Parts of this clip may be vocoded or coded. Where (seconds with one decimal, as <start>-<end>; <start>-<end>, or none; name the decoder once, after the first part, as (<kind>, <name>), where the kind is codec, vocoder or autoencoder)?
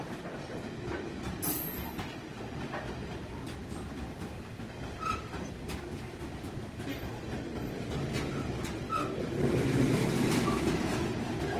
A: none